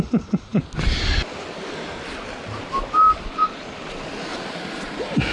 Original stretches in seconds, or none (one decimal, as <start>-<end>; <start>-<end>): 0.0-4.3